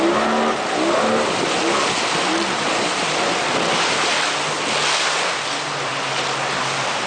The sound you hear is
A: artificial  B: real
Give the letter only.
B